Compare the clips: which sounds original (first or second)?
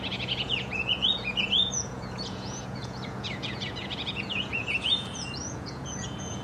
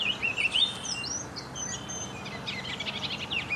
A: second